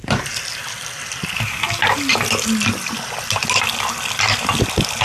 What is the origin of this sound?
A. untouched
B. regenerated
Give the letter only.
A